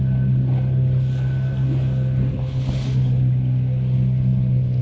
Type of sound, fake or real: real